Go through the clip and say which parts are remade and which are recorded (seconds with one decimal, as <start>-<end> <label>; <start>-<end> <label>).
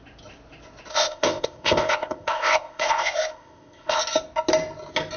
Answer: 0.0-0.9 recorded; 0.9-4.0 remade; 4.0-5.2 recorded